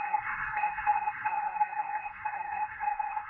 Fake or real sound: fake